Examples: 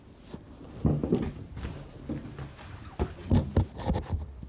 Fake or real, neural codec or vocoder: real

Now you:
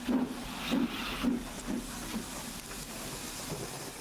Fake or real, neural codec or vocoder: real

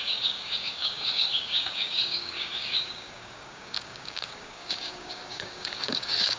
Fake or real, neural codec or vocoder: fake, codec, DAC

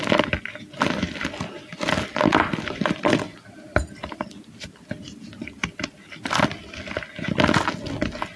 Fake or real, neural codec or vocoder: real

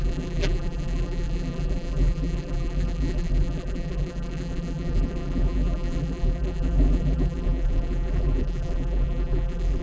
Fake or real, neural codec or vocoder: fake, vocoder, BigVGAN v2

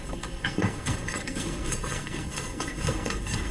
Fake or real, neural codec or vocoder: fake, codec, SNAC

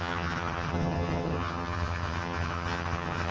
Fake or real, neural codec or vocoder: fake, vocoder, HiFi-GAN